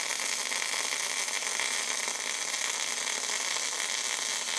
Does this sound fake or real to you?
real